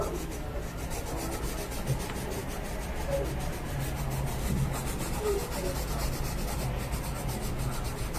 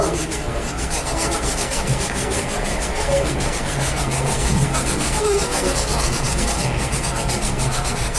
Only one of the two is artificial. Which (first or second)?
second